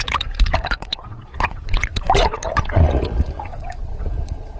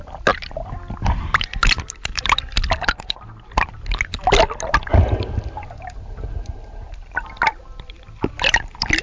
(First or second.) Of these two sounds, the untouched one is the second